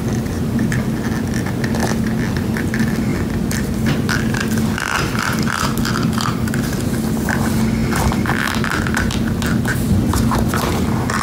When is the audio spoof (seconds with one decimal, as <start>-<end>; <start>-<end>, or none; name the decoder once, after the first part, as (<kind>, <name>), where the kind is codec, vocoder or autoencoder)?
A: none